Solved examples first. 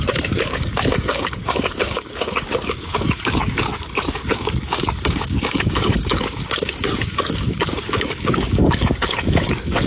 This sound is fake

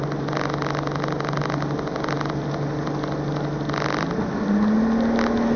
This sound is real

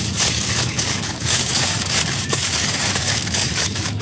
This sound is fake